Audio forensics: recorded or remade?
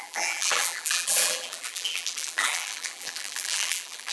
remade